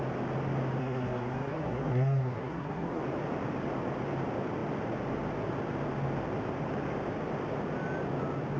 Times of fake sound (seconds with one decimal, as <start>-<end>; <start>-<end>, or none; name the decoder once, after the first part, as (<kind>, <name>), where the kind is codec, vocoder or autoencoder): 0.8-3.0 (codec, SNAC)